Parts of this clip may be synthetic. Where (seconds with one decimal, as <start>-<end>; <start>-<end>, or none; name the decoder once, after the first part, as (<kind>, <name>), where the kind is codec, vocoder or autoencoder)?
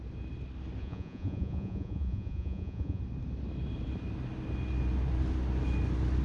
0.8-3.0 (vocoder, Vocos)